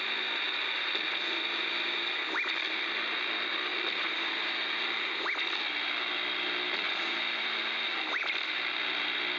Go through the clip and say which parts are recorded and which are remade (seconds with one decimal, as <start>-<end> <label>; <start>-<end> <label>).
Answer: 0.0-9.4 recorded